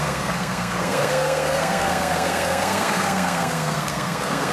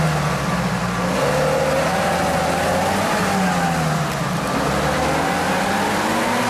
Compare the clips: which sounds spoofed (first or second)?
first